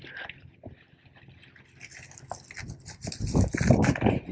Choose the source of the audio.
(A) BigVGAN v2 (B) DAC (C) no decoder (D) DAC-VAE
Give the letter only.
C